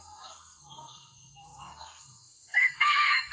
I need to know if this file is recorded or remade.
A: remade